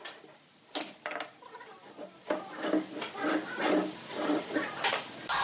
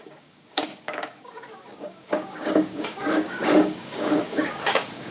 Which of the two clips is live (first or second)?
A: first